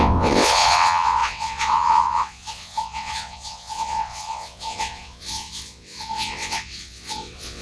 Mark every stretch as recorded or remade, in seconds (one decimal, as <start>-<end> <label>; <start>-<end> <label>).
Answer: 0.0-7.6 remade